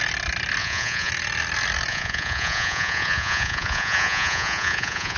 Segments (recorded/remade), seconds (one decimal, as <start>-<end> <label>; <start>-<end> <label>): 0.0-0.6 recorded; 0.6-1.1 remade; 1.1-1.9 recorded; 1.9-5.2 remade